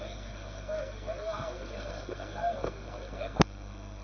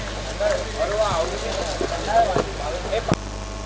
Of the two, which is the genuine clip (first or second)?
second